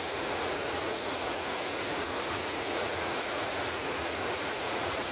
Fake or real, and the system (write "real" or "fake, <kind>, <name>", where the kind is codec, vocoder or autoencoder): fake, vocoder, Vocos